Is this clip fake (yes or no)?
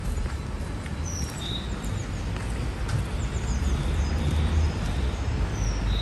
no